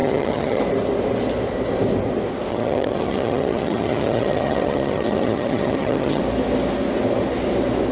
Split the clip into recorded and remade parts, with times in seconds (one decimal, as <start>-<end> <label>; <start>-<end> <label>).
0.0-0.6 remade; 0.6-2.5 recorded; 2.5-6.2 remade; 6.2-7.9 recorded